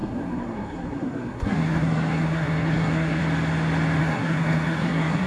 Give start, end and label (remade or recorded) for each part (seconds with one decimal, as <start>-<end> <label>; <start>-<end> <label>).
0.0-3.2 remade; 3.2-4.0 recorded; 4.0-5.3 remade